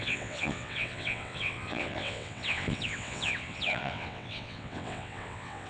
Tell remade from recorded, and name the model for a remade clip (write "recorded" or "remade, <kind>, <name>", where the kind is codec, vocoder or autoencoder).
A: remade, vocoder, WaveNeXt